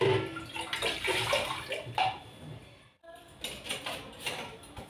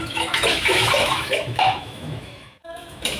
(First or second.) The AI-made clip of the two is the second